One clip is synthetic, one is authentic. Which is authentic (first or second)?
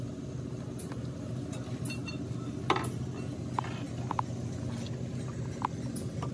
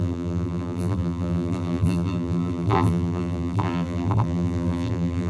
first